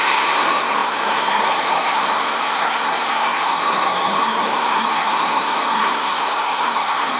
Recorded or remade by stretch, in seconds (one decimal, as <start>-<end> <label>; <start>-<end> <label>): 0.0-7.2 remade